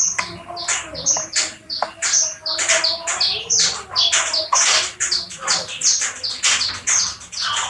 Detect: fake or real real